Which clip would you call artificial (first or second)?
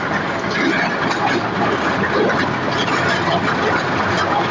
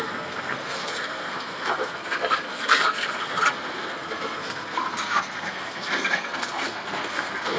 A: second